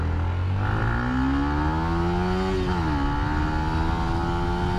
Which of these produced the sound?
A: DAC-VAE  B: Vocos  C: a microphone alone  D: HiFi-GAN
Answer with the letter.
C